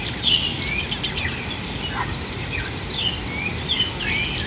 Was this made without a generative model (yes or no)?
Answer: yes